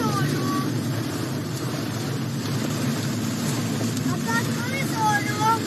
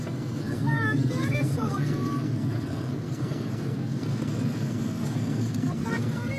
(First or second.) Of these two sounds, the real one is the first